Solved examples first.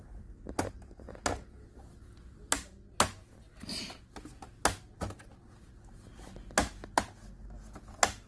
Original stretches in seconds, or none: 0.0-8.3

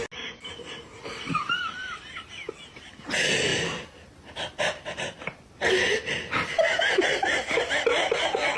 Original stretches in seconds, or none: 0.0-1.8; 2.3-3.5; 4.6-7.1; 7.7-8.6